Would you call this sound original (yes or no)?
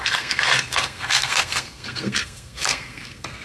no